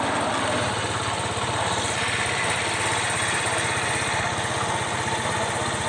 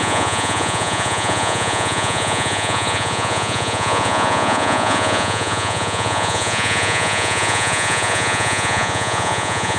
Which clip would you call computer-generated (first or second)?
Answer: second